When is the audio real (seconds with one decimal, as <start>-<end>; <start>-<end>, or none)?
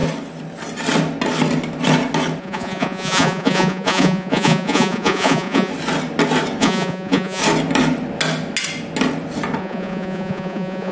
0.0-2.4; 5.7-6.6; 7.4-9.6